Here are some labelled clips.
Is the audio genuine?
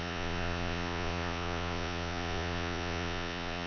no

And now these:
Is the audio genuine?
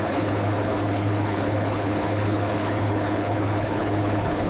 no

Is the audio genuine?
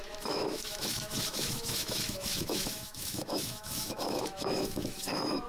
no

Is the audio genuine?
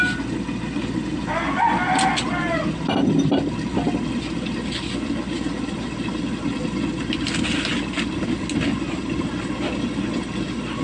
yes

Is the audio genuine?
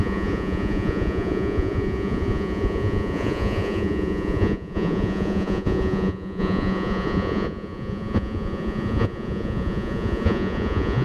no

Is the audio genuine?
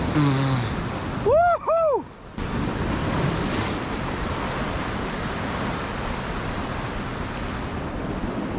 yes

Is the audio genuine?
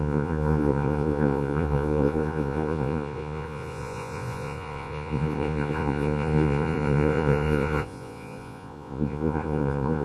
no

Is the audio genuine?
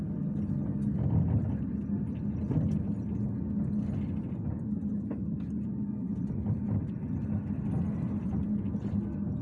yes